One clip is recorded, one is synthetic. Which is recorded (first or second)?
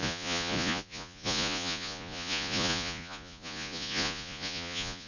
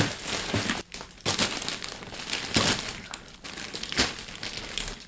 second